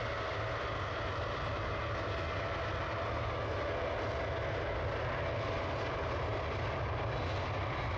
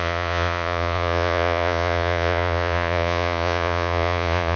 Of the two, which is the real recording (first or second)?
first